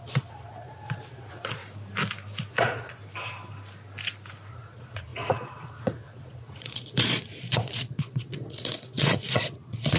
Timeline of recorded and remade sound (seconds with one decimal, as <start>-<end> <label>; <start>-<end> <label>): 0.0-1.6 remade; 1.6-2.5 recorded; 2.5-3.0 remade; 3.0-4.5 recorded; 4.5-10.0 remade